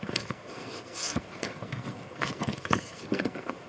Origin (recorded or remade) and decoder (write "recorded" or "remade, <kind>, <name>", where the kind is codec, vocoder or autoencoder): remade, codec, SNAC